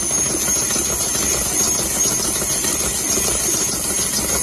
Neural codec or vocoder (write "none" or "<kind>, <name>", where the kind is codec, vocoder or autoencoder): none